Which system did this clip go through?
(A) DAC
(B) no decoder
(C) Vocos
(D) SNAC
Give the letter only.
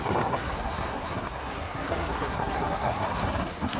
D